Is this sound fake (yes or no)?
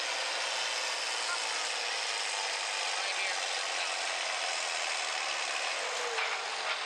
no